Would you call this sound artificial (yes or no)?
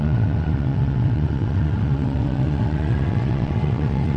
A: yes